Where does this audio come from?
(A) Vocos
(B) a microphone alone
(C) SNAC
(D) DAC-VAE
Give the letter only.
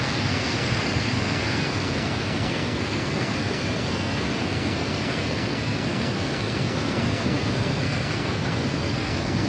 C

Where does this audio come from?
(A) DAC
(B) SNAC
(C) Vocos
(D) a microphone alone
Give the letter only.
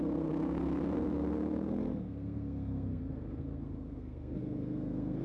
B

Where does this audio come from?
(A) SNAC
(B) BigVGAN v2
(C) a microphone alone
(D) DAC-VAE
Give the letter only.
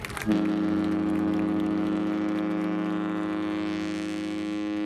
C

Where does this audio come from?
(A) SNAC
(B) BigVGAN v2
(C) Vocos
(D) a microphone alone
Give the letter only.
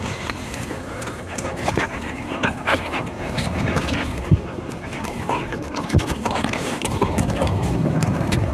A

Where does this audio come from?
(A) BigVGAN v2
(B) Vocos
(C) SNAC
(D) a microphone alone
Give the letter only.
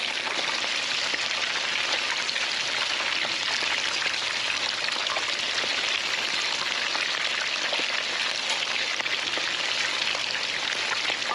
D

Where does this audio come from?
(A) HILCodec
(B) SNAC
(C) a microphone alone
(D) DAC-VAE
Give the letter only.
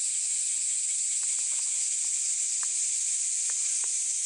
C